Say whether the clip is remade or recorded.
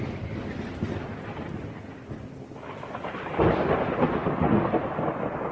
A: recorded